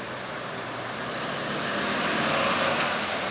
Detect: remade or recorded recorded